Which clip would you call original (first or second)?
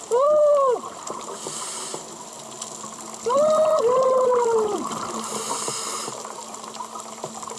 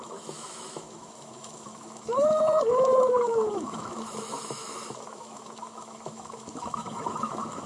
first